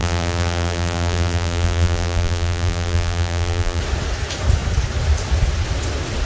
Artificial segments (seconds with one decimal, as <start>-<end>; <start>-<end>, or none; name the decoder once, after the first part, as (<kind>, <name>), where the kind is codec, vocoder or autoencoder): 0.0-3.8 (vocoder, BigVGAN v2)